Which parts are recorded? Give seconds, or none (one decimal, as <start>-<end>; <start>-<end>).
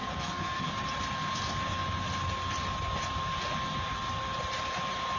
0.7-5.2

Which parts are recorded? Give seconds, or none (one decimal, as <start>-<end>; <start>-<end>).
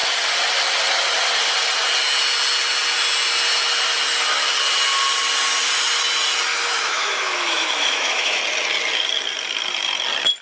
0.0-6.5; 8.4-10.4